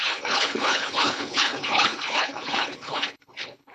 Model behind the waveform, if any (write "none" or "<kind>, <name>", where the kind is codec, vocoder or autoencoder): codec, HILCodec